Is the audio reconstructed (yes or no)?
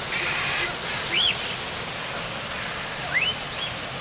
no